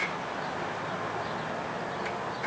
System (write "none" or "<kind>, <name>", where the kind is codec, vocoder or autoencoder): none